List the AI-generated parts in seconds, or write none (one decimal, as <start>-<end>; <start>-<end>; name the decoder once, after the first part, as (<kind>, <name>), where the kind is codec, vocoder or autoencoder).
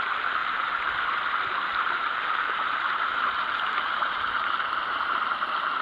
0.4-0.9 (vocoder, BigVGAN v2); 1.7-5.2